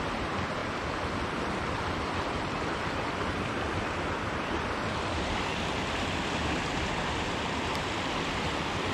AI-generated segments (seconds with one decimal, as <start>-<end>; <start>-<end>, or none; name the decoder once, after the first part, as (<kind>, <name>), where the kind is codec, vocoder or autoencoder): 0.0-0.6 (vocoder, BigVGAN v2); 2.2-8.9